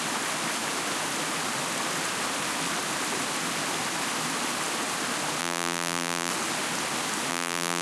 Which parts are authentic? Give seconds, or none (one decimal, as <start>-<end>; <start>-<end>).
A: 0.0-5.4; 6.3-7.3